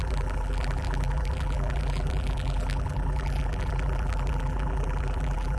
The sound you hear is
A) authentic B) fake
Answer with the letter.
B